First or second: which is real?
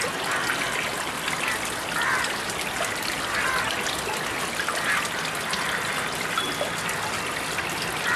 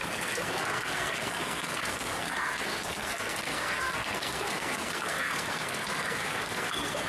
first